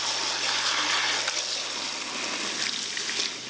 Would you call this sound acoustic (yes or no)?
yes